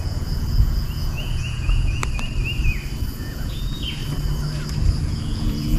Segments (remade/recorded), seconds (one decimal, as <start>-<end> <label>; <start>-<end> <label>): 0.0-2.0 remade; 2.0-3.1 recorded; 3.1-4.0 remade; 4.0-5.0 recorded; 5.0-5.8 remade